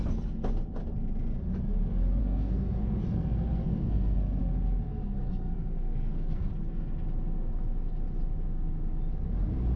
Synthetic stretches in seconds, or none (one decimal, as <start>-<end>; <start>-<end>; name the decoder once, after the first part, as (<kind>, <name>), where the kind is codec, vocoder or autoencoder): 2.2-4.4 (codec, SNAC); 4.9-6.5